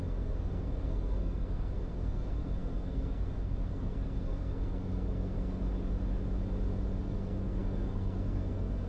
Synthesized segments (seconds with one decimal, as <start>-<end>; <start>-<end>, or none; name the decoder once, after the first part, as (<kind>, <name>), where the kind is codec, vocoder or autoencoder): 0.0-5.6 (codec, SNAC); 7.0-8.9